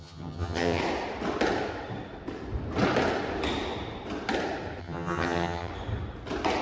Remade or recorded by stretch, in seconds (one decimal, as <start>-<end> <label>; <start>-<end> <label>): 0.0-0.8 remade; 0.8-4.8 recorded; 4.8-5.7 remade; 5.7-6.6 recorded